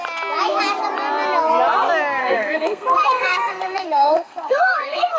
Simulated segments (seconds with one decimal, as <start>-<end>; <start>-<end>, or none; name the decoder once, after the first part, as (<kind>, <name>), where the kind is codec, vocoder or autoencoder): 2.2-5.2 (codec, SNAC)